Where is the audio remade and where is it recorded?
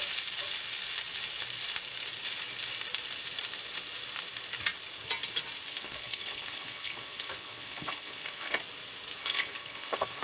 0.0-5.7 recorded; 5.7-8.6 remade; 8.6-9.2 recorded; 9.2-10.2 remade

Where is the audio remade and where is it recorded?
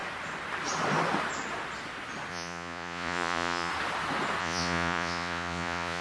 0.0-2.3 recorded; 2.3-3.7 remade; 3.7-4.4 recorded; 4.4-6.0 remade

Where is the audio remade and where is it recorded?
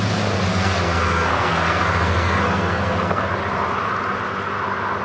0.0-0.5 recorded; 0.5-3.3 remade; 3.3-5.0 recorded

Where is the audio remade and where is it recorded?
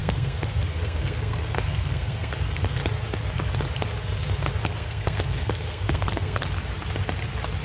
0.0-2.8 remade; 2.8-4.6 recorded; 4.6-6.5 remade; 6.5-7.6 recorded